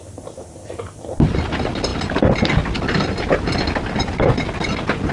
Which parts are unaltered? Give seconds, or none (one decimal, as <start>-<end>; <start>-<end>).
0.0-5.1